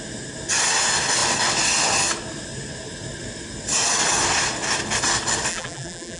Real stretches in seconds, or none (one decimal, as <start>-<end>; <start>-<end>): 0.0-5.5